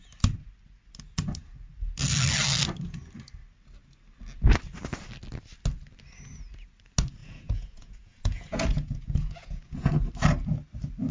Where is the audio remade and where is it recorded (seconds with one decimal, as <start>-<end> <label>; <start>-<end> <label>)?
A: 0.0-7.2 recorded; 7.2-9.9 remade; 9.9-11.1 recorded